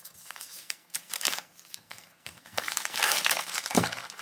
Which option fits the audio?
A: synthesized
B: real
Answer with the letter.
A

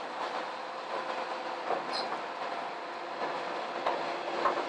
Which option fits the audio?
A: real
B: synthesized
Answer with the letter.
A